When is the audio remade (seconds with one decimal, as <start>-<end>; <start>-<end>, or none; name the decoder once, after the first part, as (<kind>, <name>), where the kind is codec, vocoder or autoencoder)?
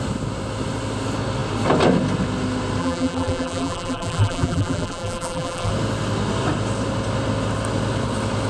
2.8-5.7 (vocoder, BigVGAN v2)